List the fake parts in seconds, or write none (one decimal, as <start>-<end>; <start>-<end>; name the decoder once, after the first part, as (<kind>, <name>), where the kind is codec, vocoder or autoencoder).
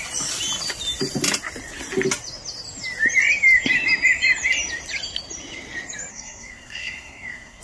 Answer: 6.1-7.6 (codec, SNAC)